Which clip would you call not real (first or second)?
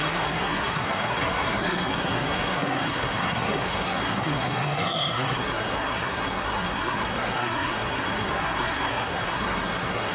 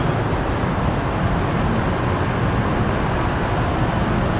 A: first